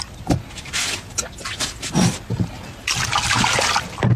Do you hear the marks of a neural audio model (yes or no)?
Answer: no